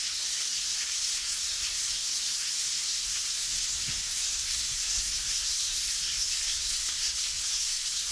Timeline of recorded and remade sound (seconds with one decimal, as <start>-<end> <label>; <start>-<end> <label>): 0.0-8.1 remade